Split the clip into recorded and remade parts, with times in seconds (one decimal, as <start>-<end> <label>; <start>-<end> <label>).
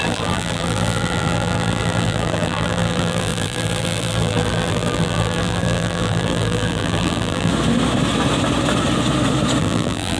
0.0-7.5 remade; 7.5-9.6 recorded; 9.6-10.2 remade